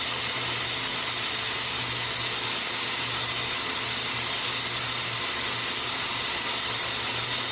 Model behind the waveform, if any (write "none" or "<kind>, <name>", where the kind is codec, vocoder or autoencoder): none